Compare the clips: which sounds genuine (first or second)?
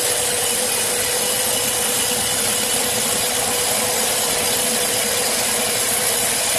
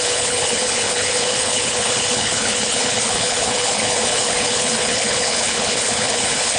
first